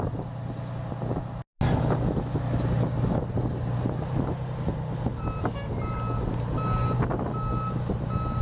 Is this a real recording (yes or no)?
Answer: yes